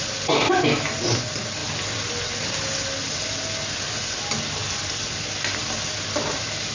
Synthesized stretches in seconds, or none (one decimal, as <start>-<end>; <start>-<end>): 1.6-2.1; 4.6-5.1